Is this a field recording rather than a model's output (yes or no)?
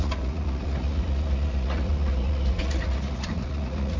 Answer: no